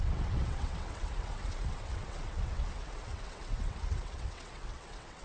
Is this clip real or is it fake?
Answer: fake